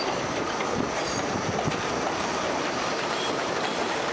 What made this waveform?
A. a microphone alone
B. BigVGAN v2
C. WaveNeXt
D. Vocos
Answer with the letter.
B